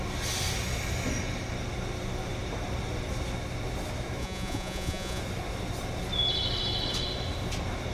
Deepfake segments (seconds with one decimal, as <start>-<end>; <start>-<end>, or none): 4.2-5.2